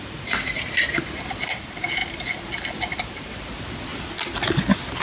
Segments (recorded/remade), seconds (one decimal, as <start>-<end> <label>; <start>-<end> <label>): 0.0-5.0 recorded